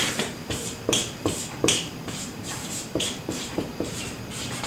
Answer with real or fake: fake